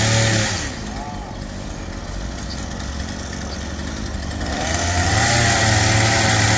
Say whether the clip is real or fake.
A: real